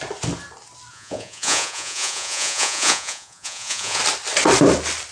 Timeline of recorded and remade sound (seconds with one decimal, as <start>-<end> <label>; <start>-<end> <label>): 0.0-0.9 recorded; 0.9-4.0 remade; 4.0-5.1 recorded